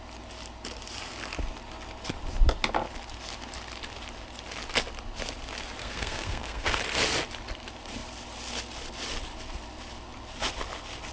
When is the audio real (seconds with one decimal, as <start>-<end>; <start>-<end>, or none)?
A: 0.0-5.8; 6.8-11.1